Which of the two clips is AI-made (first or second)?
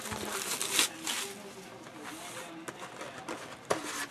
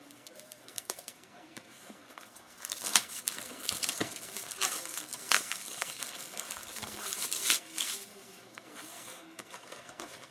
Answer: second